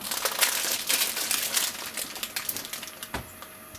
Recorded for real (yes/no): yes